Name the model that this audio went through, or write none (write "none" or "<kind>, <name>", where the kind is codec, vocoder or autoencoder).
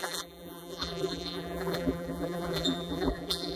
vocoder, BigVGAN v2